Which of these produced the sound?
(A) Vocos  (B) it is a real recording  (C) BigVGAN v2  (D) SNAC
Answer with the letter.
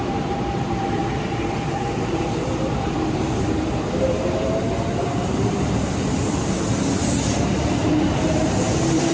C